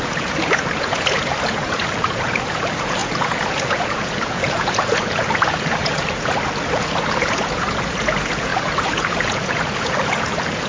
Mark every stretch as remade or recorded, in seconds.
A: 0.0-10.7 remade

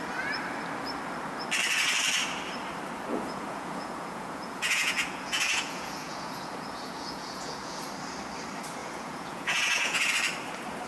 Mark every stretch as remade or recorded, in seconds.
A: 0.0-3.1 recorded; 3.1-7.8 remade; 7.8-8.8 recorded; 8.8-10.1 remade; 10.1-10.9 recorded

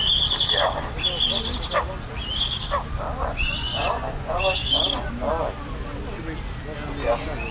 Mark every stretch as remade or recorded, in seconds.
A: 0.0-3.3 recorded; 3.3-5.1 remade; 5.1-7.5 recorded